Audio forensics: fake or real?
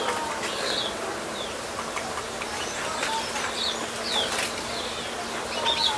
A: real